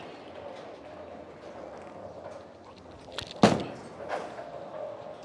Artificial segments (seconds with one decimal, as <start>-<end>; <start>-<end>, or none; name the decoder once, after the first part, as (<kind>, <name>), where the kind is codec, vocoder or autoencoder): none